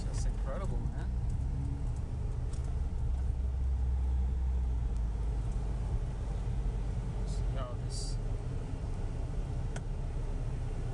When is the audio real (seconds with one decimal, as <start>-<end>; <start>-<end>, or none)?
0.0-10.9